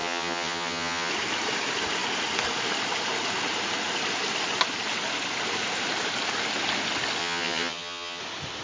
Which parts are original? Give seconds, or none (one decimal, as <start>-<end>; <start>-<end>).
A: 1.1-7.2; 8.2-8.6